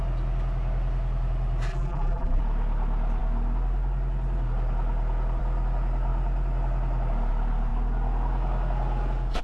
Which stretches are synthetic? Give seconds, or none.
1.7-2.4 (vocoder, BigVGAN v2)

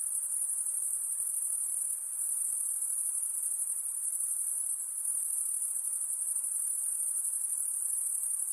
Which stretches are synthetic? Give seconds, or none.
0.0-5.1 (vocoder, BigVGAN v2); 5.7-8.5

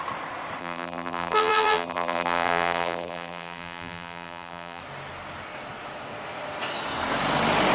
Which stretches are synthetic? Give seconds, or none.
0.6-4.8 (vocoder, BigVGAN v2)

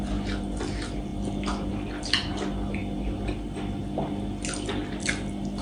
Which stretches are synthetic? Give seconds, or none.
none